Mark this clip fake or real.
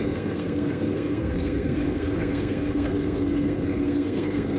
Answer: fake